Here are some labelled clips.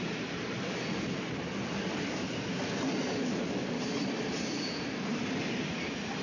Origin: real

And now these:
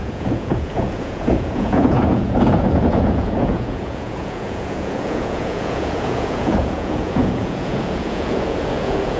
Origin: fake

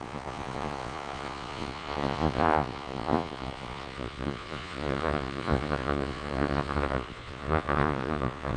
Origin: fake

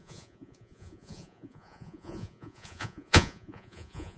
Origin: fake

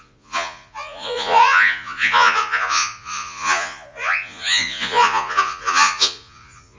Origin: fake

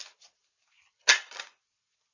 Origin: real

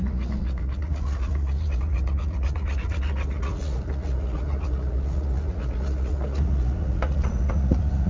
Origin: fake